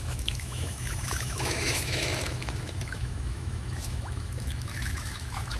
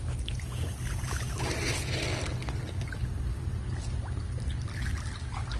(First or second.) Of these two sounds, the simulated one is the first